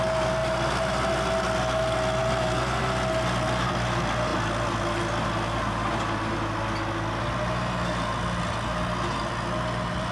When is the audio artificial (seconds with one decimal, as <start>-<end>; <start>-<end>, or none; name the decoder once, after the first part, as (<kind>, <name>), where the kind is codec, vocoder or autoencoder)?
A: none